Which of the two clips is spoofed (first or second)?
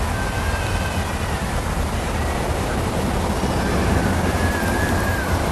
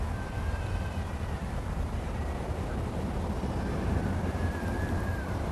second